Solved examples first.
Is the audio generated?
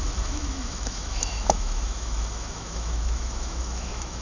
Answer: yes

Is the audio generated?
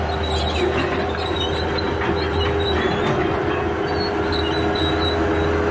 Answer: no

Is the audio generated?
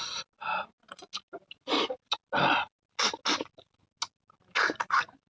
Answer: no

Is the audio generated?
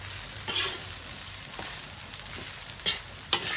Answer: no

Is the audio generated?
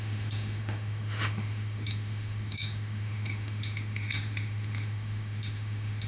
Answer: yes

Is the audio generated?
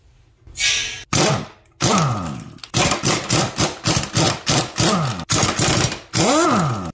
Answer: no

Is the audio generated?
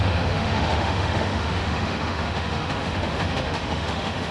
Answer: yes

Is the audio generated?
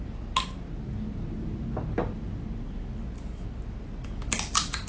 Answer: no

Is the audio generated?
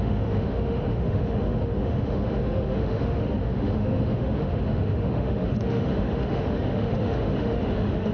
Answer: yes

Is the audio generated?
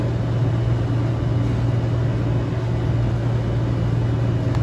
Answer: no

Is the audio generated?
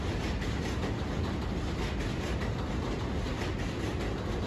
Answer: no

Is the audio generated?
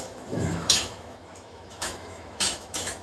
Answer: yes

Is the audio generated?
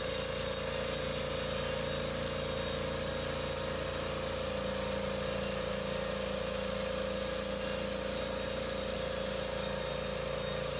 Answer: no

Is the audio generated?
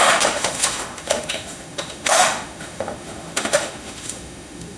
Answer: yes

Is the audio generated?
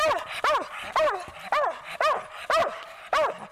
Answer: no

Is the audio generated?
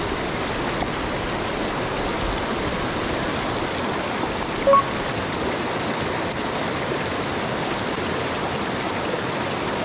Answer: no